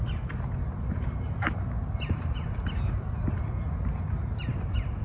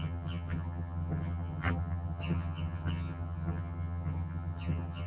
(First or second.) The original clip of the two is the first